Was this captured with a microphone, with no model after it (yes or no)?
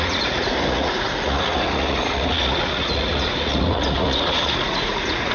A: no